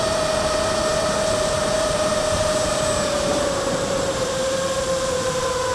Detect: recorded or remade remade